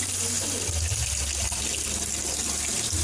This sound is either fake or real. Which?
real